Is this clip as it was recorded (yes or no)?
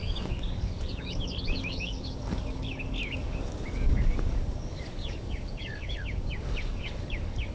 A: no